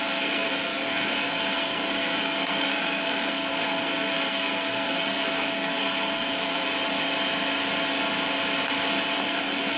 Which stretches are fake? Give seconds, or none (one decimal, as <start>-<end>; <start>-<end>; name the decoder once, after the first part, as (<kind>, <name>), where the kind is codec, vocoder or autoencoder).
0.0-6.7 (codec, SNAC); 9.2-9.8